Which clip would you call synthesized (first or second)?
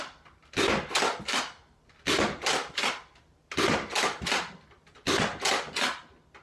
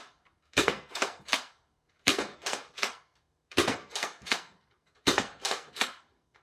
second